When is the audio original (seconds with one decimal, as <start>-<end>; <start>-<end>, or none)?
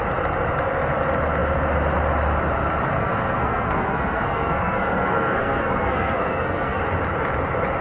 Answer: 0.0-3.0; 6.8-7.8